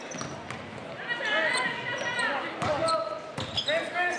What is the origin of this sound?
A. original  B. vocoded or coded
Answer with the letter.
A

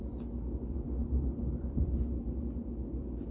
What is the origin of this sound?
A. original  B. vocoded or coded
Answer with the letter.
A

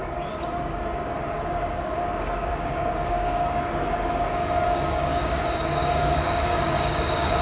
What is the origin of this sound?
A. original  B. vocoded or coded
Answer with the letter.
B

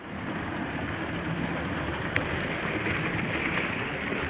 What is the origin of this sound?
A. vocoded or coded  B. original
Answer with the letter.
B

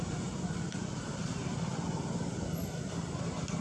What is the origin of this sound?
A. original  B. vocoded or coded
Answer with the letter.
A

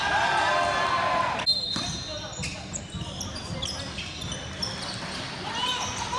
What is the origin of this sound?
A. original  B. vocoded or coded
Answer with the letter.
A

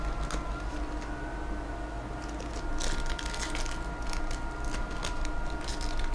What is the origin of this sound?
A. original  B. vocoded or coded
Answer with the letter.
A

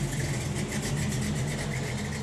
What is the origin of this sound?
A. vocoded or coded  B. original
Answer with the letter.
B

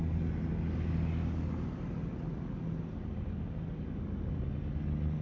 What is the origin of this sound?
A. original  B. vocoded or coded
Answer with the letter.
A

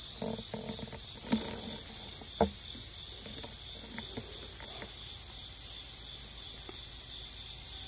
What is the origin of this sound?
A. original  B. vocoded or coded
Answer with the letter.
A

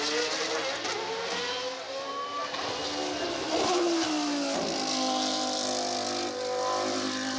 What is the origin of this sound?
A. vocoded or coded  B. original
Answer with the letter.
B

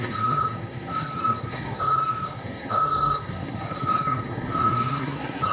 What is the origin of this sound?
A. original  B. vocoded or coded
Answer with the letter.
B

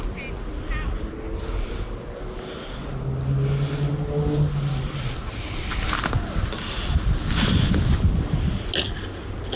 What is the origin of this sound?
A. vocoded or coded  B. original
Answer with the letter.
B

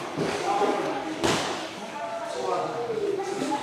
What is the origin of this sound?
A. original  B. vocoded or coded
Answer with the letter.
B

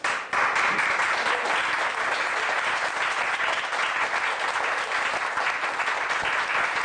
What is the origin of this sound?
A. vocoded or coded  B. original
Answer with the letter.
B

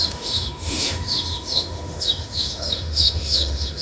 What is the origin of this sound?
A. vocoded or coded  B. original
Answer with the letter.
A